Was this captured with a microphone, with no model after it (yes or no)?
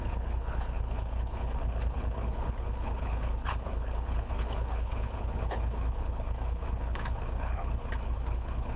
no